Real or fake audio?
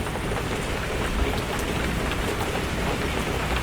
real